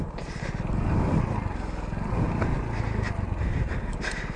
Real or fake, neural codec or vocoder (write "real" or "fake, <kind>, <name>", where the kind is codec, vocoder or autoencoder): real